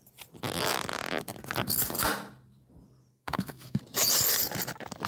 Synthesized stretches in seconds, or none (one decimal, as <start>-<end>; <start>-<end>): 3.1-3.8